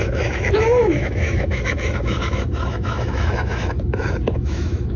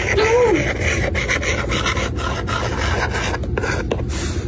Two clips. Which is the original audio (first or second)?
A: second